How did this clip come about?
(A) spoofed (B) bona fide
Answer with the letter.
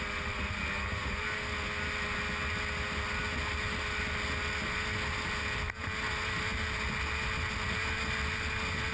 B